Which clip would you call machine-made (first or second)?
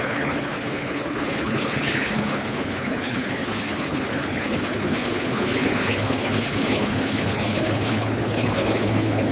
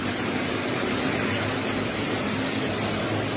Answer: first